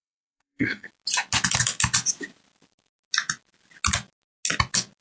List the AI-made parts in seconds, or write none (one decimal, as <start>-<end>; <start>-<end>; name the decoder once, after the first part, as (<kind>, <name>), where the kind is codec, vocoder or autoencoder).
0.0-0.9 (codec, SNAC)